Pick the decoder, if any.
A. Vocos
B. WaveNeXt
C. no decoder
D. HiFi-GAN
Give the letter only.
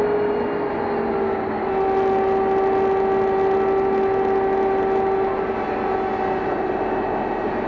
C